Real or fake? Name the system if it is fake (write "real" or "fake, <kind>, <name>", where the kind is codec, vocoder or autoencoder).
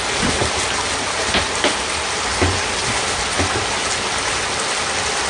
real